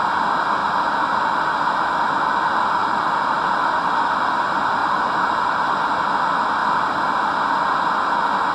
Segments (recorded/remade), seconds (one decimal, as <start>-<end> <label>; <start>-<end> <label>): 0.0-0.6 recorded; 0.6-1.4 remade; 1.4-2.8 recorded; 2.8-3.4 remade; 3.4-4.8 recorded; 4.8-5.9 remade; 5.9-8.5 recorded